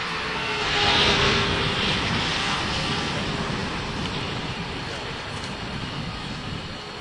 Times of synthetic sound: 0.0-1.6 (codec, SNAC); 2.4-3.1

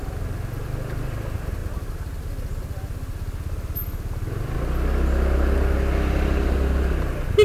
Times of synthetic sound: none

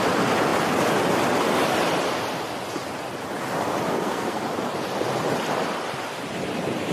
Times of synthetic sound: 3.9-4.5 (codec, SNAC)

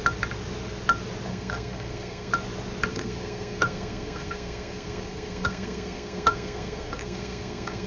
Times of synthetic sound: 1.3-2.3 (codec, SNAC); 2.9-7.9

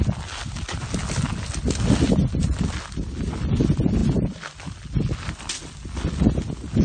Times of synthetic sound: none